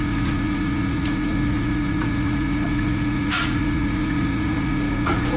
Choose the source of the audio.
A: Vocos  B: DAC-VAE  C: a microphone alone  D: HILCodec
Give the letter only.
A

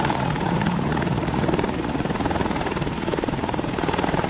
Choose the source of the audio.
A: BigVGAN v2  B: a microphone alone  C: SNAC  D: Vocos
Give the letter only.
D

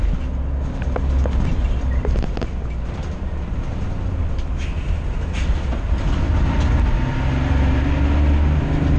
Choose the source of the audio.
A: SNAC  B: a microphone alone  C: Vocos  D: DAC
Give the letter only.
B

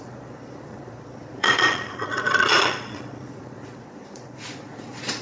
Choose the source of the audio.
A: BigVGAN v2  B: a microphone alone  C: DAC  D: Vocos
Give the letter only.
D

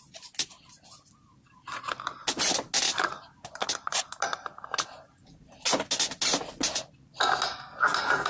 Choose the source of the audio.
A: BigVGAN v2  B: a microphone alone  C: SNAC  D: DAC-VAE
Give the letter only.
B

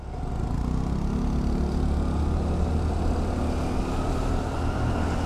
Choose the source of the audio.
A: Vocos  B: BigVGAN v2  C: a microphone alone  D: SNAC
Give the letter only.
C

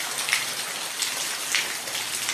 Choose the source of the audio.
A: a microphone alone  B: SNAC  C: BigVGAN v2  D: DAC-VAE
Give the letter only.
A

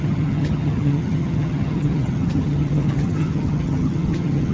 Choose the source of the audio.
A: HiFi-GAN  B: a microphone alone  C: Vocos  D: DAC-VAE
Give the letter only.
A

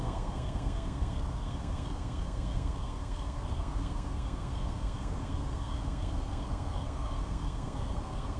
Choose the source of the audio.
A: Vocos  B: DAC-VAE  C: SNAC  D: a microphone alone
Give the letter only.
C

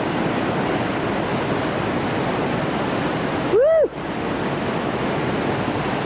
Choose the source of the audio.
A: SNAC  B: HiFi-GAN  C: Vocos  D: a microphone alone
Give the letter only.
D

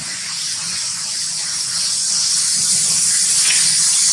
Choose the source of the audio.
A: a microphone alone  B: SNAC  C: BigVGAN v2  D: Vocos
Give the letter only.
D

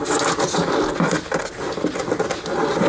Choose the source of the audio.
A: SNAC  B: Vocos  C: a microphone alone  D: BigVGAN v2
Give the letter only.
C